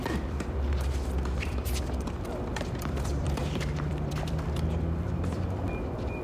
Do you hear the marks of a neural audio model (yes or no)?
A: yes